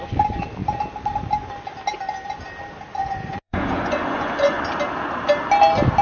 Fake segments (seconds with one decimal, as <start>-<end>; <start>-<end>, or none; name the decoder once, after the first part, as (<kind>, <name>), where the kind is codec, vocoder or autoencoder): 3.0-4.6 (vocoder, Vocos)

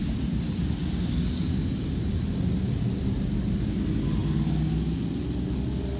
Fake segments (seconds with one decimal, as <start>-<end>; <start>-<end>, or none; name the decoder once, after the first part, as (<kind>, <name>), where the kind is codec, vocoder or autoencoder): none